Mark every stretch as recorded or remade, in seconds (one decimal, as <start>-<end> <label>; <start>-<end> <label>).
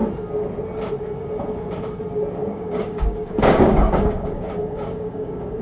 0.0-2.4 recorded; 2.4-5.6 remade